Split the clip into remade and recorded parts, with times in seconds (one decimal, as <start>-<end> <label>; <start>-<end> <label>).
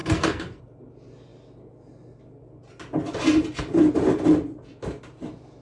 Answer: 0.0-0.6 remade; 0.6-5.6 recorded